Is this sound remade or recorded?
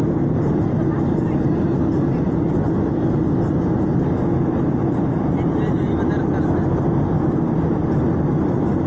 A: recorded